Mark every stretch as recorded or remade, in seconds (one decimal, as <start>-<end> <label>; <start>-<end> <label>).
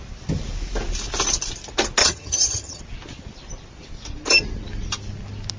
0.0-2.0 recorded; 2.0-2.8 remade; 2.8-5.6 recorded